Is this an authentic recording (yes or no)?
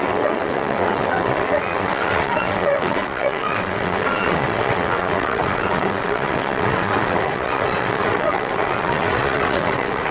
no